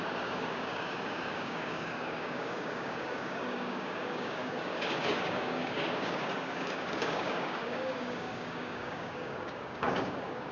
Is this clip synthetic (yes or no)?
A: yes